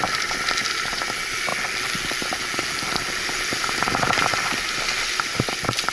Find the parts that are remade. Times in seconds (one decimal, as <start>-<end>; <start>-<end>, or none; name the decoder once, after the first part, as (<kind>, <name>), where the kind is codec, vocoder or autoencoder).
none